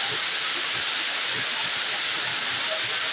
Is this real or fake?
real